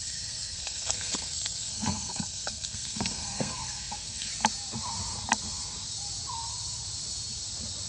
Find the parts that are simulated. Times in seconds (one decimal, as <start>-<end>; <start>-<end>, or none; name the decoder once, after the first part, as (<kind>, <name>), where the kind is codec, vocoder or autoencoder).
0.0-4.3 (codec, SNAC)